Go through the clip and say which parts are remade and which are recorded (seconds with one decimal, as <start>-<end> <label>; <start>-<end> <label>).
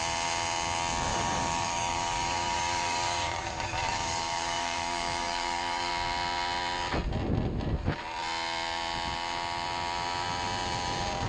0.0-1.1 recorded; 1.1-5.9 remade; 5.9-11.3 recorded